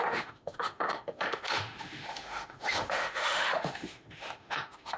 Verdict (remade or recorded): remade